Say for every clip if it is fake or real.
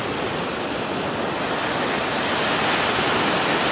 real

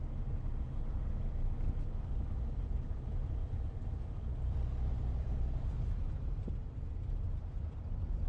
real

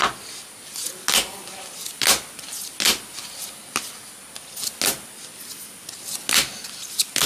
real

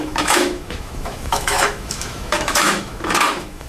fake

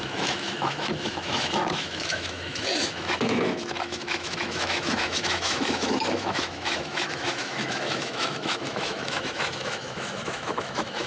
fake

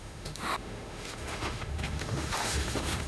fake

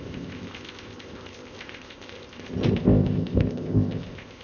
fake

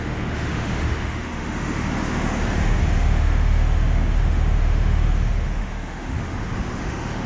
fake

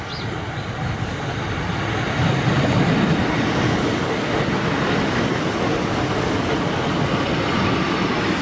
real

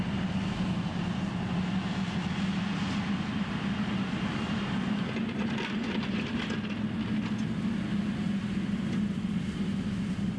real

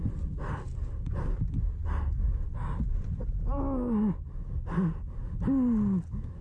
real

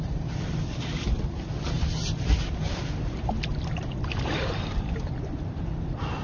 fake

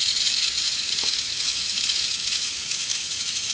fake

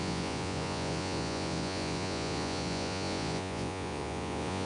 fake